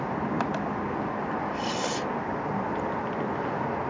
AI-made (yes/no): no